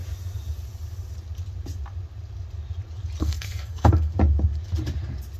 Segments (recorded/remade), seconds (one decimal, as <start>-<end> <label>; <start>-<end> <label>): 0.0-3.2 recorded; 3.2-4.1 remade; 4.1-5.4 recorded